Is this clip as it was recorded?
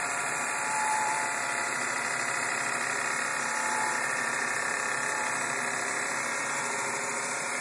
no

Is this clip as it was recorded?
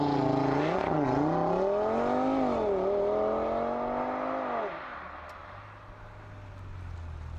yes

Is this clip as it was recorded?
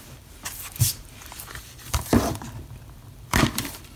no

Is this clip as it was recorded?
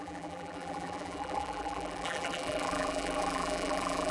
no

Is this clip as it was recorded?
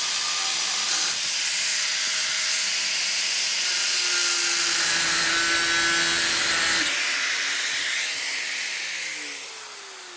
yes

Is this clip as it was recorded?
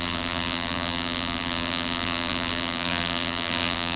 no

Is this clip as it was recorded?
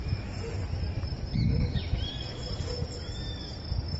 yes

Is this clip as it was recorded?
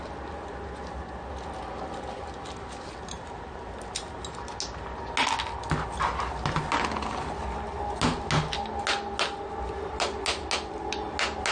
yes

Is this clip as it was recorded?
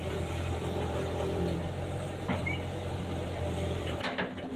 no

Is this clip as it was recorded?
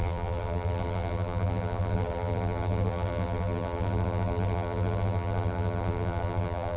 no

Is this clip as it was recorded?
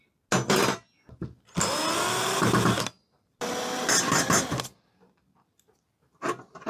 yes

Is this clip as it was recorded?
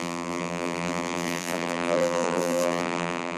no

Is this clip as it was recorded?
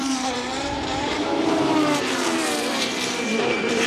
no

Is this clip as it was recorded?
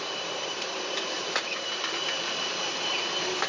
no